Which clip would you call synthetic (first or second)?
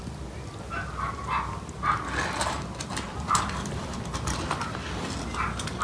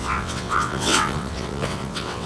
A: second